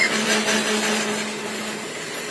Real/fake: real